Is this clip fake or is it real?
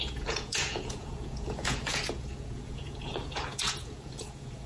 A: fake